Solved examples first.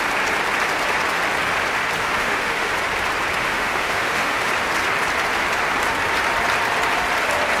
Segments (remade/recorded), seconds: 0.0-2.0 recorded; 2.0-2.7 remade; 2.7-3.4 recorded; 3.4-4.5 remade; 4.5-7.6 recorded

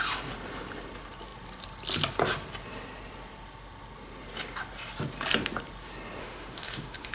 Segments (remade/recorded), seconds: 0.0-6.2 recorded; 6.2-7.1 remade

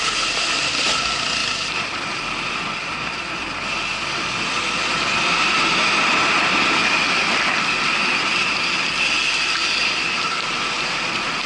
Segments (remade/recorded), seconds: 0.0-1.4 recorded; 1.4-3.3 remade; 3.3-11.5 recorded

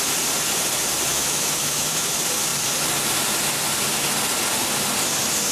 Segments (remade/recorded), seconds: 0.0-1.1 recorded; 1.1-2.1 remade; 2.1-5.5 recorded